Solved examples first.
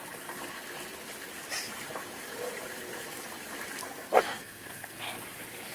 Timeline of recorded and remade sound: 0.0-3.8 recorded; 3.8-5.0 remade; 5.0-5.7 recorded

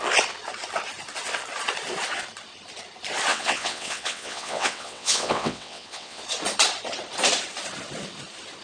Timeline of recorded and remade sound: 0.0-3.3 recorded; 3.3-6.2 remade; 6.2-8.6 recorded